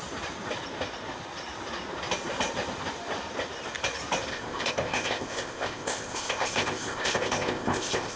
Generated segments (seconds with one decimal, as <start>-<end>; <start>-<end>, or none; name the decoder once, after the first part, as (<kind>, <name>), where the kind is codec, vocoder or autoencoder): 4.3-8.2 (codec, ZipCodec)